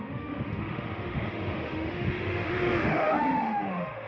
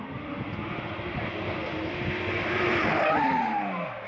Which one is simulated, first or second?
first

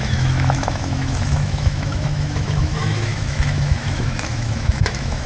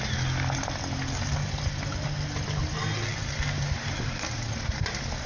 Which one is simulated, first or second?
first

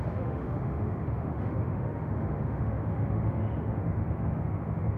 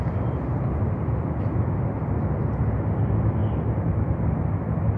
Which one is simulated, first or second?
first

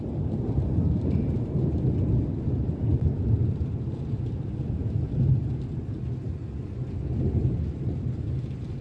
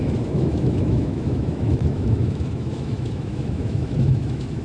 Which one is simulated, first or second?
second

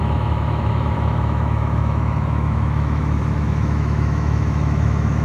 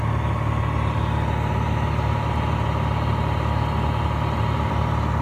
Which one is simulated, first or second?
first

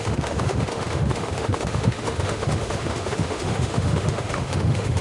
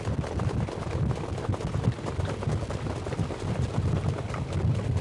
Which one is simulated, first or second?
first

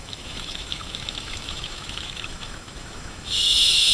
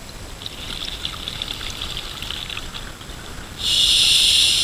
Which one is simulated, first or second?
first